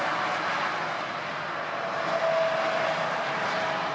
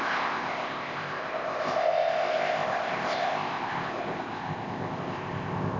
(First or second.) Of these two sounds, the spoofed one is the second